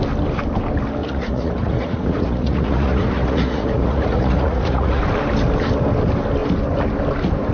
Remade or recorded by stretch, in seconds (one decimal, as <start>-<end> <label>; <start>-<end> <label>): 0.0-1.0 recorded; 1.0-5.0 remade; 5.0-7.5 recorded